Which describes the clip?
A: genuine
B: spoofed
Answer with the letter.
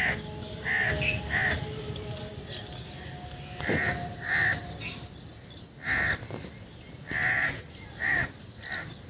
A